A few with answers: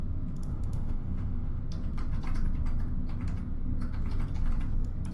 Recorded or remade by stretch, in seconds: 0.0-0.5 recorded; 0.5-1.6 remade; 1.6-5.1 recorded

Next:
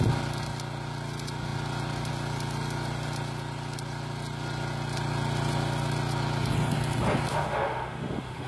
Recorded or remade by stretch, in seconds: 0.0-7.3 recorded; 7.3-8.5 remade

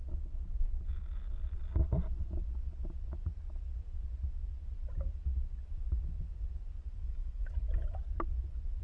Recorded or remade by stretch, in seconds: 0.0-7.0 recorded; 7.0-7.5 remade; 7.5-8.8 recorded